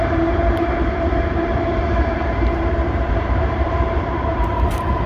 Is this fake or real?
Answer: fake